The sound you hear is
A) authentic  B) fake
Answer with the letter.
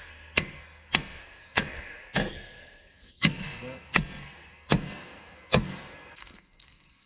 B